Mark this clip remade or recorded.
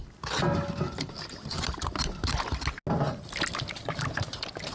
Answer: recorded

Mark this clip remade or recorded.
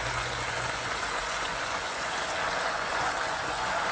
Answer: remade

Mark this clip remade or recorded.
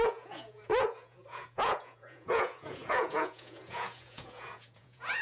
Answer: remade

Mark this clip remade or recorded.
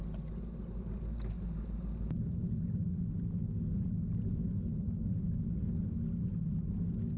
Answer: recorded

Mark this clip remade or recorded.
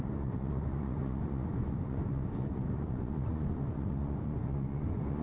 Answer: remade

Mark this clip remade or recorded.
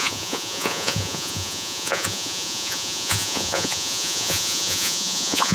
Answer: remade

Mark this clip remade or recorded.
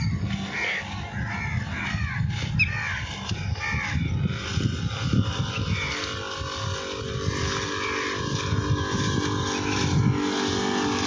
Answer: recorded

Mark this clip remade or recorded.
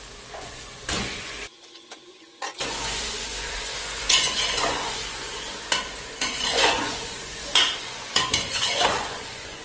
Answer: remade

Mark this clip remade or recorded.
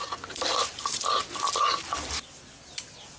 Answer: recorded